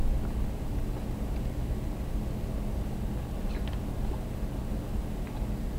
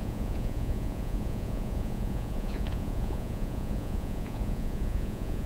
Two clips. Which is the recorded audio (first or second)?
first